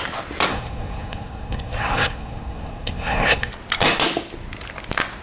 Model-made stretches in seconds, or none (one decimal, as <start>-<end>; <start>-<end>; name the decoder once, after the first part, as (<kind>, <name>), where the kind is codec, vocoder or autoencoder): 0.5-3.5 (codec, SNAC)